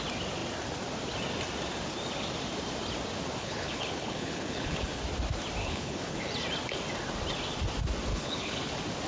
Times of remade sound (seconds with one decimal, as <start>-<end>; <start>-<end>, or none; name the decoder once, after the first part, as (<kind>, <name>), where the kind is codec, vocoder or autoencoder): 3.4-5.0 (codec, HILCodec); 5.6-6.2; 8.1-8.7